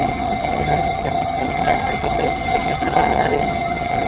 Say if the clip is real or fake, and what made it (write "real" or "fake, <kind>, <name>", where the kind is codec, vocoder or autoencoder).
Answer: fake, vocoder, HiFi-GAN